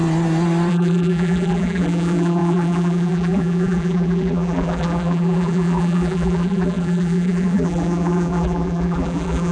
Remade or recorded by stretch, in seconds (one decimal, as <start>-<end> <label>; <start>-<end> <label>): 0.0-0.7 recorded; 0.7-9.5 remade

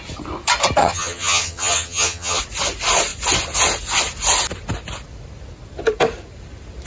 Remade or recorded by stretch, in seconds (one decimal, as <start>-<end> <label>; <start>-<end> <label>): 0.0-0.8 recorded; 0.8-2.4 remade; 2.4-6.9 recorded

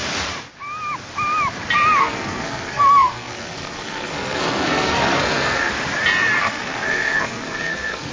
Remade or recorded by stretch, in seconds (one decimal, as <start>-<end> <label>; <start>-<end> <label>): 0.0-2.0 recorded; 2.0-5.7 remade; 5.7-6.4 recorded; 6.4-8.1 remade